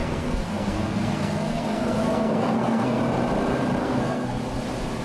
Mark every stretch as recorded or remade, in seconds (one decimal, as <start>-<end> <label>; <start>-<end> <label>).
0.0-3.0 remade; 3.0-3.8 recorded; 3.8-4.4 remade; 4.4-5.0 recorded